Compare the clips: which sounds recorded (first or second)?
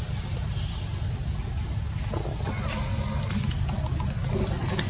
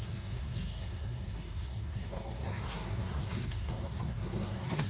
first